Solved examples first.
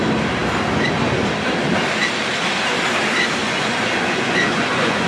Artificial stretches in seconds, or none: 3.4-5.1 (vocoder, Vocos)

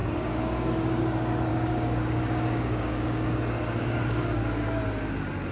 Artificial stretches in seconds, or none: 0.0-1.0 (codec, DAC); 1.5-4.8

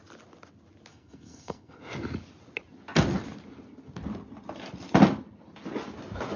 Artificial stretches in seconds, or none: 0.9-1.8 (codec, SNAC)

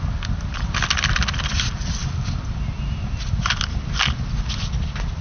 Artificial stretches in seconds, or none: none

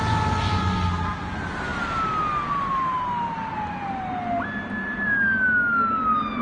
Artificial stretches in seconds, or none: none